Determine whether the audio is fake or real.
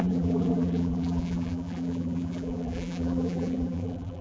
fake